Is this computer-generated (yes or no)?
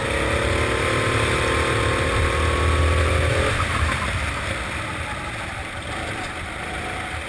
no